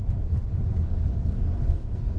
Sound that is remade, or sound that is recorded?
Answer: remade